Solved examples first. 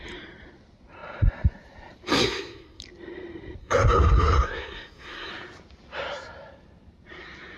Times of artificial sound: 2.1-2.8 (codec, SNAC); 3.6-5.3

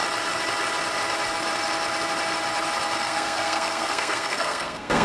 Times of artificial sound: 3.0-5.0 (codec, SNAC)

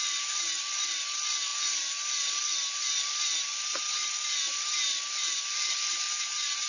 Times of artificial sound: none

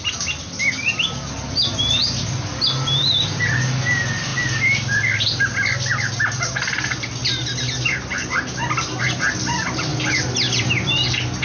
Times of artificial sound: none

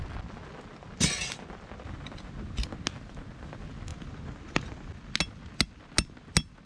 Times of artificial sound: none